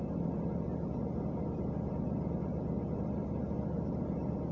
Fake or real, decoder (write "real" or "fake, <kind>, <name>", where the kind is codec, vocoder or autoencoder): real